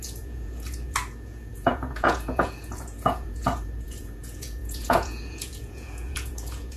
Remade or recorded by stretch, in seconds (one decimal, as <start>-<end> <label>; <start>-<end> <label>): 0.0-6.8 remade